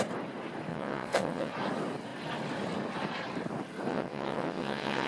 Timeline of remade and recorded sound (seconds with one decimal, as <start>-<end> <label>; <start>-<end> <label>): 0.0-0.7 recorded; 0.7-1.5 remade; 1.5-3.9 recorded; 3.9-5.1 remade